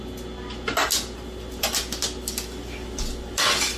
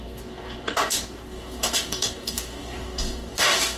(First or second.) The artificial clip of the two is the second